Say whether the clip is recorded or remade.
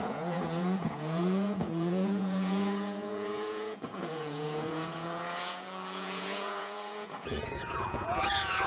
remade